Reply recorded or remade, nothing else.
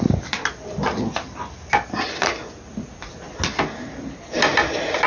recorded